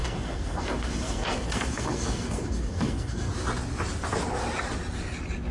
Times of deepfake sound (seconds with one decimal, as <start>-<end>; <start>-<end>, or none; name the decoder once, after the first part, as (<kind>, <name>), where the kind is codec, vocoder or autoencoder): 0.0-3.3 (codec, SNAC)

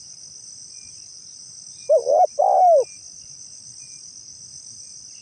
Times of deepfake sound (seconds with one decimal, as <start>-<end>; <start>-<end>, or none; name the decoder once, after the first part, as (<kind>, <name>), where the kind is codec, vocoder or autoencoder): none

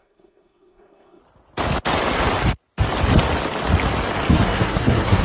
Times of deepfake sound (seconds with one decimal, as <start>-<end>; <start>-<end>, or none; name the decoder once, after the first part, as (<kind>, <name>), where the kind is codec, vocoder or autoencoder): 0.0-1.2 (codec, SNAC); 4.3-5.2